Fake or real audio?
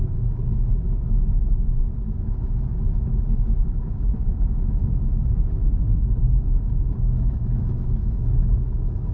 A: fake